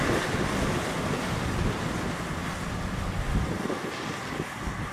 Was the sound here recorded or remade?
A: recorded